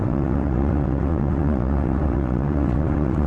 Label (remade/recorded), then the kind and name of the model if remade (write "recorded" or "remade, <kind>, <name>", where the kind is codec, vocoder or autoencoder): remade, vocoder, WaveNeXt